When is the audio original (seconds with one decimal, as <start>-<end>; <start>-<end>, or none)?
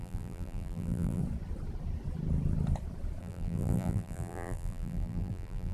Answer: 1.2-3.2